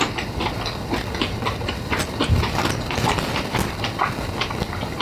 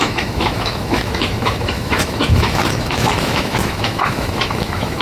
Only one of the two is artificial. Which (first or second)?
second